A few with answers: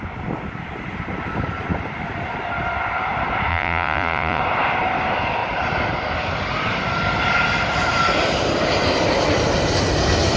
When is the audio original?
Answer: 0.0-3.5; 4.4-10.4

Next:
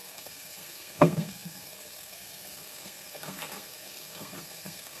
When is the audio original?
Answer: none

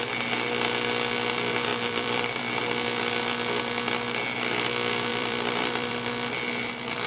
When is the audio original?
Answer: 0.0-1.7; 2.4-5.1; 5.9-7.1

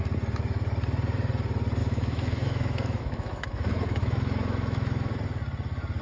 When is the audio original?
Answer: 0.0-1.8; 5.1-6.0

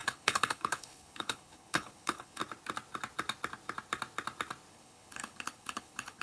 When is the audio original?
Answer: 2.4-4.7